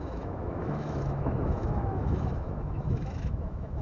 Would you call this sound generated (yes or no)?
yes